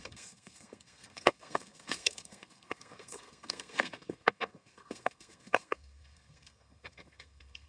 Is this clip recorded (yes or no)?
no